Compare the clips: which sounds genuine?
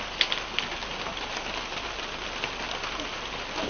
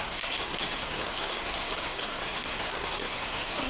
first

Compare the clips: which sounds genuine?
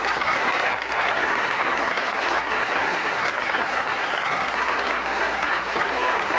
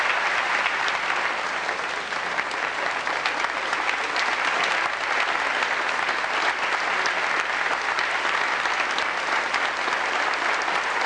second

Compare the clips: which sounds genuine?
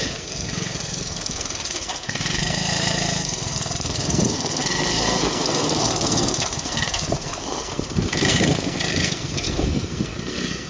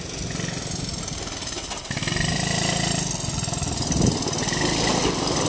second